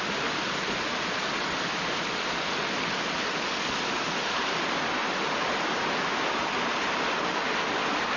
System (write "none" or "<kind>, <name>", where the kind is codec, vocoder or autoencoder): none